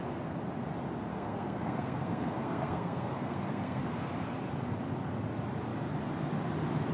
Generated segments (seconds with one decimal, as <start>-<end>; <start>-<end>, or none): 1.1-3.8